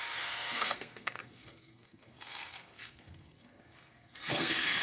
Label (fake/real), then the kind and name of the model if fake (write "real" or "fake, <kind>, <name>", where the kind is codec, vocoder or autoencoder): fake, codec, SNAC